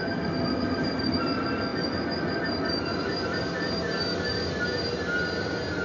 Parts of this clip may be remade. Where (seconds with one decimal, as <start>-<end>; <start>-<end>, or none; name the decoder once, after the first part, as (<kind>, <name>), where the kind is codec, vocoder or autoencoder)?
none